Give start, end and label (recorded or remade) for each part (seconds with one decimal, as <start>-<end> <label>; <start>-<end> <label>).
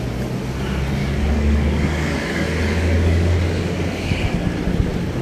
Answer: 0.0-1.0 recorded; 1.0-4.1 remade; 4.1-5.2 recorded